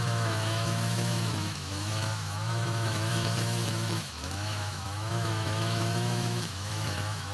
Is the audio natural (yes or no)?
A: no